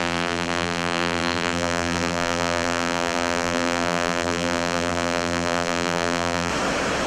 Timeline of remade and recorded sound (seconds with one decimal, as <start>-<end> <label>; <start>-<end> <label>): 0.0-6.5 remade; 6.5-7.1 recorded